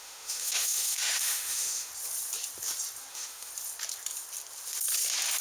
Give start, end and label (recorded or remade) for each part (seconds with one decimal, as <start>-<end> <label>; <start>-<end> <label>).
0.0-1.9 remade; 1.9-3.1 recorded; 3.1-3.5 remade; 3.5-5.4 recorded